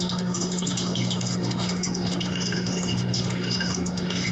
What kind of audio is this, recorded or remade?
remade